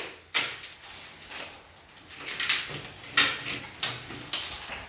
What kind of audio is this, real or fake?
real